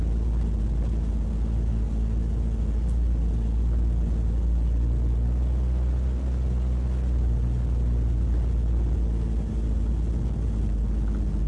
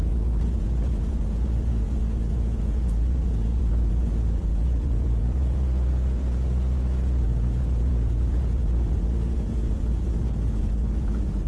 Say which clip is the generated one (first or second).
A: second